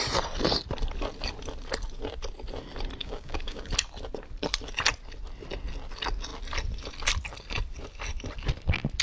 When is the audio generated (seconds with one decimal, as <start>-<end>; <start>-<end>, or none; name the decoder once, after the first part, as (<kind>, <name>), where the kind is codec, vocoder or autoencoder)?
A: 3.0-3.7 (codec, DAC)